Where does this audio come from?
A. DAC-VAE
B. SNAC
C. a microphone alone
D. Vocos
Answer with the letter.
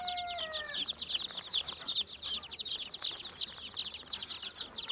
C